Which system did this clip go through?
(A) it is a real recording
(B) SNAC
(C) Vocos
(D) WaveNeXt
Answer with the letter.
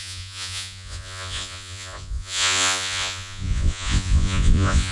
C